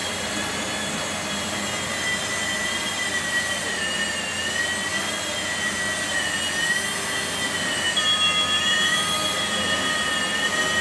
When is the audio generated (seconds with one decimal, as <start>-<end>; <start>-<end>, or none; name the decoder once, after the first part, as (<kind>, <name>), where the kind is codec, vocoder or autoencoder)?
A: 0.0-3.7 (vocoder, BigVGAN v2)